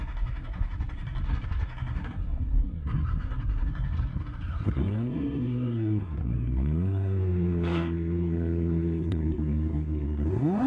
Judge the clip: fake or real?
fake